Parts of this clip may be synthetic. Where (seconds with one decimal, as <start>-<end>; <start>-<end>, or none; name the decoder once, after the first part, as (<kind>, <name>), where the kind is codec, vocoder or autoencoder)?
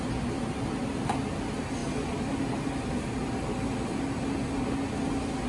none